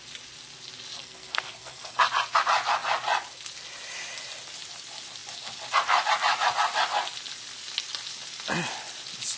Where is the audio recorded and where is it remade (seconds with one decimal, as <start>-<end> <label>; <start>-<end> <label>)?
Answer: 0.0-1.0 recorded; 1.0-2.0 remade; 2.0-9.4 recorded